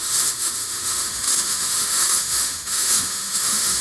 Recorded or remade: remade